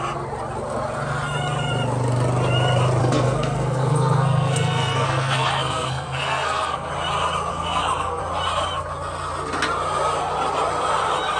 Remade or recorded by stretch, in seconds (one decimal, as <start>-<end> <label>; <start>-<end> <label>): 0.0-3.0 recorded; 3.0-6.9 remade; 6.9-7.5 recorded; 7.5-8.2 remade; 8.2-11.4 recorded